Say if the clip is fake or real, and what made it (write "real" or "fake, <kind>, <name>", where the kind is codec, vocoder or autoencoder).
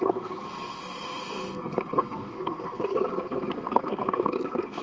fake, codec, SNAC